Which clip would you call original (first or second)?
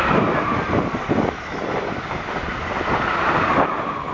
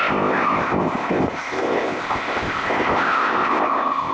first